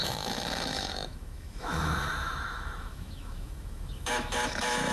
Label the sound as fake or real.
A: fake